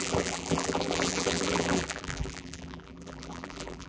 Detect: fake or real fake